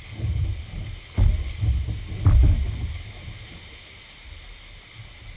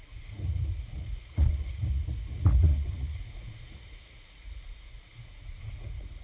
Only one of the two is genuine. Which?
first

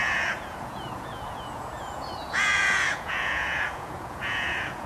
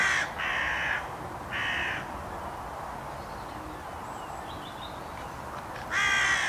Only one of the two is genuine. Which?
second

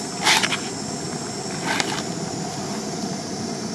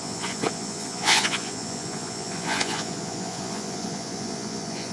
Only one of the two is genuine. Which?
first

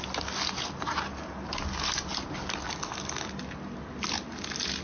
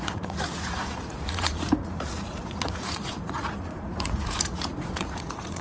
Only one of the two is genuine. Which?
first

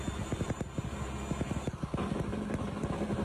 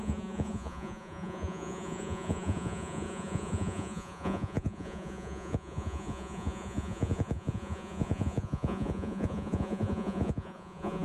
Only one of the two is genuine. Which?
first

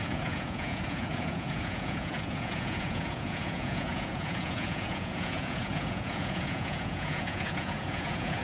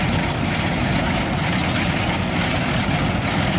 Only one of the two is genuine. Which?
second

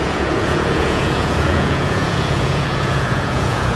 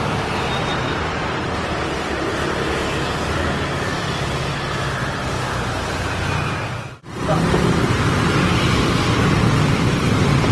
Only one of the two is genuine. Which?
second